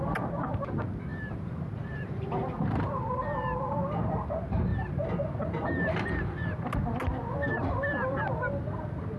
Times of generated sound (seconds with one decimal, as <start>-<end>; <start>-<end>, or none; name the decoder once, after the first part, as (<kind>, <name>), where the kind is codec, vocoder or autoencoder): 1.1-2.9 (vocoder, BigVGAN v2)